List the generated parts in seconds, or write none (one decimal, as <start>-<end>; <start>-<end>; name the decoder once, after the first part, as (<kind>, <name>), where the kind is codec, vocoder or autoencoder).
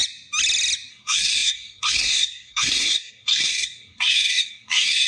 0.9-5.1 (codec, SNAC)